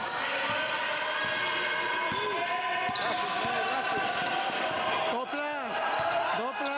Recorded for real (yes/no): yes